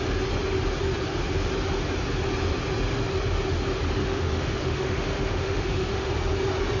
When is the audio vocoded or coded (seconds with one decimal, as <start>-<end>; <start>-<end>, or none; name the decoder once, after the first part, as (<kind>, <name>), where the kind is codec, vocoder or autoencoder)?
4.0-6.1 (autoencoder, DAC-VAE)